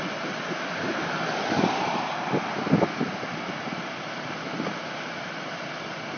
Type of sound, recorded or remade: recorded